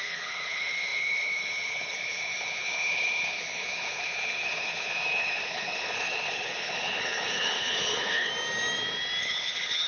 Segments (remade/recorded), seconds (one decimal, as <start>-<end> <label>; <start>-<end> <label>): 0.0-8.3 remade; 8.3-9.2 recorded; 9.2-9.9 remade